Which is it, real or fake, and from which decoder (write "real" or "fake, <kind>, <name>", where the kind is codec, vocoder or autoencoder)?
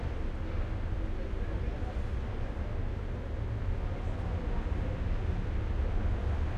real